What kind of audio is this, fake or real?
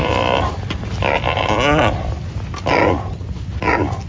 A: real